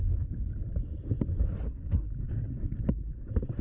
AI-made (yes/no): no